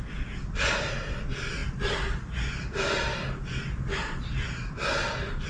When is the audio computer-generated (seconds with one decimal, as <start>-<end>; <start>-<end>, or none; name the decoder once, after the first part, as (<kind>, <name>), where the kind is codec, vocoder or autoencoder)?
none

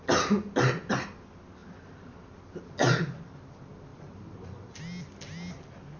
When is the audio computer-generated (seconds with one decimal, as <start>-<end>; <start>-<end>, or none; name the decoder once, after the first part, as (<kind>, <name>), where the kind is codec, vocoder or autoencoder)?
3.9-4.8 (vocoder, BigVGAN v2)

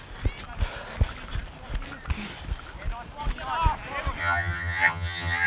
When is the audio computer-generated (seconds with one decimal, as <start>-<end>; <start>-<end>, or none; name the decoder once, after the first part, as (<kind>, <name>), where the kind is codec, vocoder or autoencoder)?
4.2-5.5 (vocoder, HiFi-GAN)

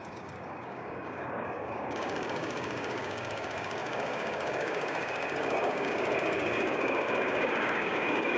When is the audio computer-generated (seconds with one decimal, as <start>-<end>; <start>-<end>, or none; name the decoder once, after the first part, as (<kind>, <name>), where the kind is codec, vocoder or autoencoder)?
0.0-8.4 (codec, DAC)

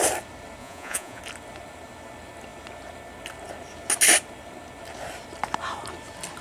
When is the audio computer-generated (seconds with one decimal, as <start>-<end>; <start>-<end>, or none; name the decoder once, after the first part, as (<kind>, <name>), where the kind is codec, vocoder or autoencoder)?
0.6-1.2 (vocoder, Vocos)

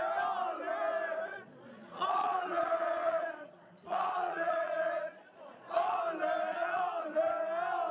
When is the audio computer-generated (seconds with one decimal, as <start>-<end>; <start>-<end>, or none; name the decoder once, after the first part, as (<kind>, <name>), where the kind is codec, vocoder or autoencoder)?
1.3-6.0 (vocoder, Vocos); 6.5-7.2